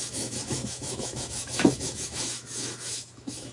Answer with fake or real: fake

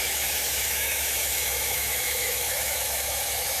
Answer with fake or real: fake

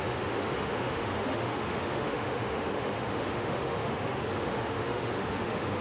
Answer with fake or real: fake